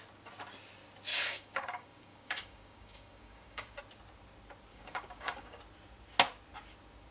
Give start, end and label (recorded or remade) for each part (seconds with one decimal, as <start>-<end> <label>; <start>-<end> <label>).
0.0-1.1 recorded; 1.1-3.8 remade; 3.8-4.7 recorded; 4.7-5.6 remade; 5.6-7.1 recorded